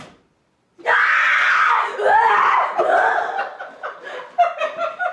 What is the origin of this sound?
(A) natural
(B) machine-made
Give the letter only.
A